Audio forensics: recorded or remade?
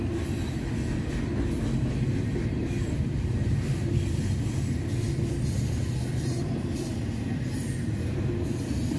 recorded